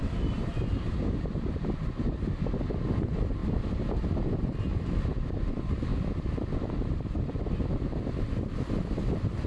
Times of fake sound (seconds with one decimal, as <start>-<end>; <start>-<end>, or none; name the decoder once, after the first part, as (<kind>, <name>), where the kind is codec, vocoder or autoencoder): none